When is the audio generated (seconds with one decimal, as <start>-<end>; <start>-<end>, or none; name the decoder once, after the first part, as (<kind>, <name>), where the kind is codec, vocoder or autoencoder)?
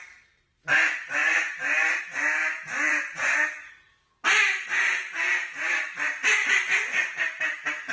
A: 2.4-3.7 (vocoder, Vocos); 6.4-7.4